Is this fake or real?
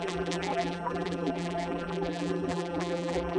fake